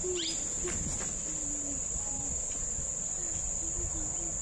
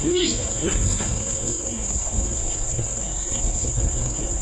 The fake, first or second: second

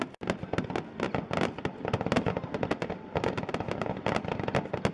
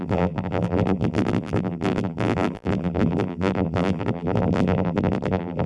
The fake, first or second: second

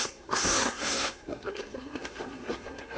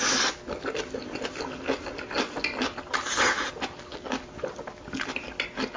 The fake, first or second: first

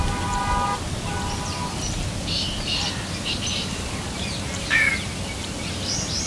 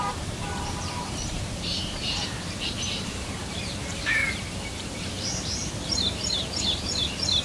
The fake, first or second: second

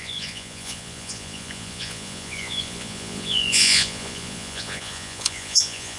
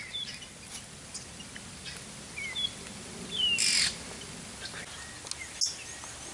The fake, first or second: first